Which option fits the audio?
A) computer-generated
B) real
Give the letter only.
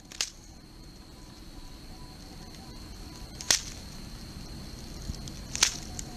B